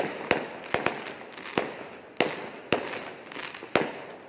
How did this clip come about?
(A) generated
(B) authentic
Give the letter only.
B